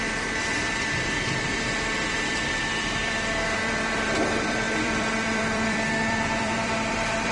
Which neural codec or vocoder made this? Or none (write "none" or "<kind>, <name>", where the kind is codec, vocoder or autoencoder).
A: vocoder, BigVGAN v2